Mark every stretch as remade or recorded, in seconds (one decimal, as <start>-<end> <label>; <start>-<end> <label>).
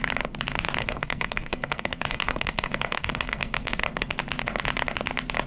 0.0-0.8 recorded; 0.8-4.1 remade; 4.1-5.5 recorded